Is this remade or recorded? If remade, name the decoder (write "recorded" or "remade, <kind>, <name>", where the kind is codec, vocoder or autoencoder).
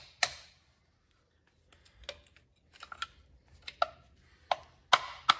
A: recorded